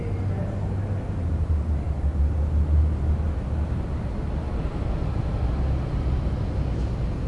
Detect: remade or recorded recorded